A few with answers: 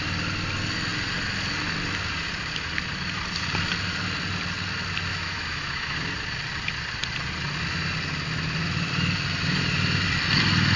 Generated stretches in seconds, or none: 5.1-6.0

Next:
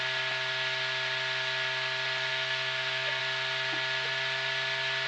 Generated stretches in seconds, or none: 2.3-3.2

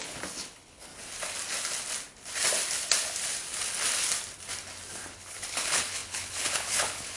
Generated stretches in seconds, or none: 0.0-0.9; 5.2-7.2

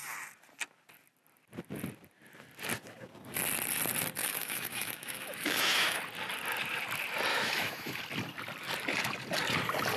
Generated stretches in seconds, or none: 4.2-6.0; 7.3-8.0

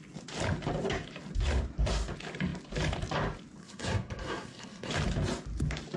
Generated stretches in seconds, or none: 3.6-4.9

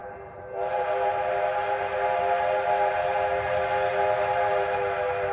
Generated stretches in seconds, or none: none

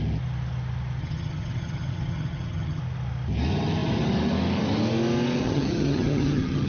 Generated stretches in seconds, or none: 1.0-2.8; 5.4-6.7